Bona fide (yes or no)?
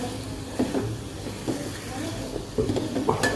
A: yes